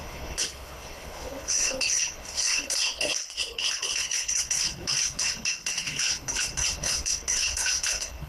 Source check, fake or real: fake